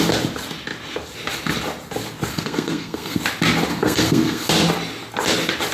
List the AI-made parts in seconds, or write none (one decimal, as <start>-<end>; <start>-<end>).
2.3-3.2; 3.7-4.5